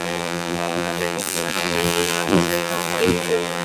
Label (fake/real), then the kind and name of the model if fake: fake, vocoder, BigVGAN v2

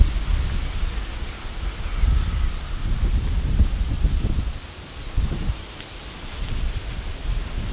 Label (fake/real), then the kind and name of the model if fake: real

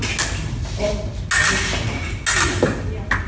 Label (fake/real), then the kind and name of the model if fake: real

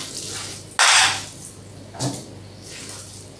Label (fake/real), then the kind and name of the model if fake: real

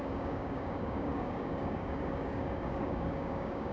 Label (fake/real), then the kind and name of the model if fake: fake, codec, DAC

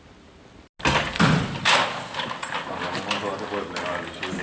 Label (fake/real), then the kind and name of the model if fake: real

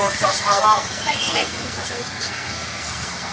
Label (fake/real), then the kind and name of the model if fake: fake, codec, SNAC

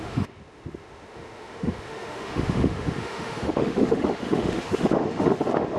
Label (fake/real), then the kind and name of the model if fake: fake, autoencoder, DAC-VAE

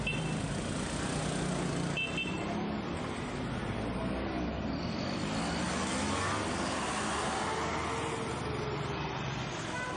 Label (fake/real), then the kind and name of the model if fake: real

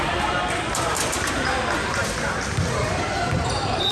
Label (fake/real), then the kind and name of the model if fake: real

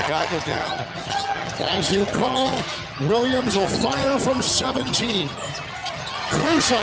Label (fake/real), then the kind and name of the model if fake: fake, vocoder, HiFi-GAN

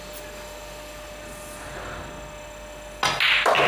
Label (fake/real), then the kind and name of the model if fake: real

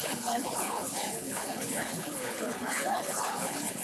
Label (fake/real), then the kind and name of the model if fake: fake, codec, HILCodec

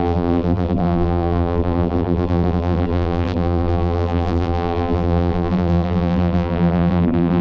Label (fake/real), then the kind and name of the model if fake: fake, vocoder, BigVGAN v2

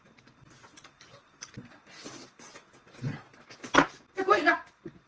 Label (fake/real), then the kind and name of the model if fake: real